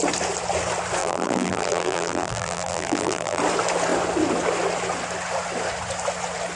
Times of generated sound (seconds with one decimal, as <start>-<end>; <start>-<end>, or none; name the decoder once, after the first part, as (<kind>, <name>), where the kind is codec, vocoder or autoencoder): 1.0-3.4 (vocoder, BigVGAN v2)